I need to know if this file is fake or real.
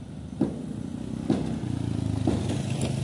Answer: real